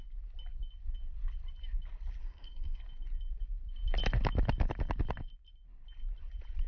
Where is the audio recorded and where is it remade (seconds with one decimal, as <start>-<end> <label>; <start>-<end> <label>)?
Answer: 0.0-2.2 recorded; 2.2-2.8 remade; 2.8-6.7 recorded

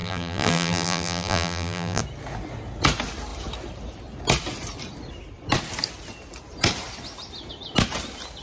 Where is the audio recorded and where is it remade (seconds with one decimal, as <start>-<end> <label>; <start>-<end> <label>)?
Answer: 0.0-2.0 remade; 2.0-8.4 recorded

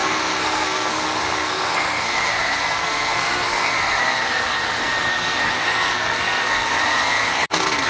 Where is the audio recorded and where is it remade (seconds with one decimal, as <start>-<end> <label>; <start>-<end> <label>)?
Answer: 0.0-7.9 remade

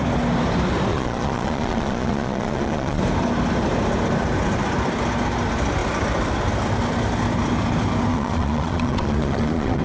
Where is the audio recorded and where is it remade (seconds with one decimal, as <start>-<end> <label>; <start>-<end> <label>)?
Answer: 0.0-0.9 recorded; 0.9-3.0 remade; 3.0-8.1 recorded; 8.1-9.8 remade

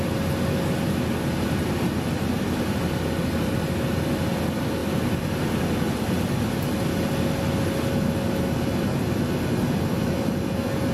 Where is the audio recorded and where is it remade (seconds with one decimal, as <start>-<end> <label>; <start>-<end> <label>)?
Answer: 0.0-10.9 recorded